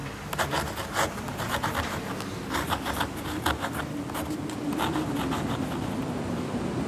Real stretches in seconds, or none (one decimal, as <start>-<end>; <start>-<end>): 0.0-6.9